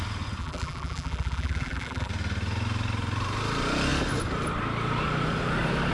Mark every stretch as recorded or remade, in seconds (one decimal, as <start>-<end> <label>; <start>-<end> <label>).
0.0-0.4 recorded; 0.4-2.1 remade; 2.1-5.9 recorded